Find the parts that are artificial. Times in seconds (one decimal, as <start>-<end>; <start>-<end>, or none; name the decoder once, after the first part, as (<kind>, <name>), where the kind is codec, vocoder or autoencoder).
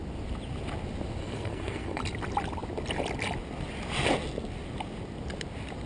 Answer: 1.2-2.0 (codec, SNAC)